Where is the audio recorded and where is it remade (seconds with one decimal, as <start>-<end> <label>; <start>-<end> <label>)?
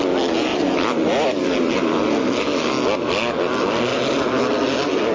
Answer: 0.0-0.5 recorded; 0.5-2.4 remade; 2.4-3.9 recorded; 3.9-4.5 remade; 4.5-5.1 recorded